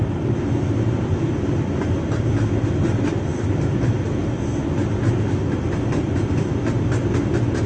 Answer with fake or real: real